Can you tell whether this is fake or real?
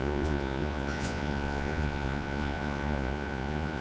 fake